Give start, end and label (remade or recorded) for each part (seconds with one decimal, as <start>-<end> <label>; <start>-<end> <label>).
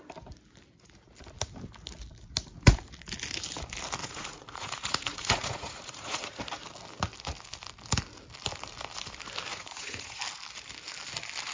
0.0-4.0 recorded; 4.0-6.4 remade; 6.4-9.5 recorded; 9.5-10.2 remade; 10.2-11.5 recorded